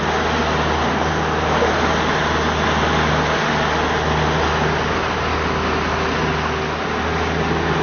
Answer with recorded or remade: recorded